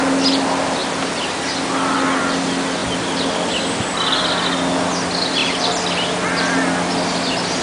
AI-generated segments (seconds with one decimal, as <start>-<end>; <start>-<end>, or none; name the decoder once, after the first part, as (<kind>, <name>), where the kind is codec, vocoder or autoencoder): none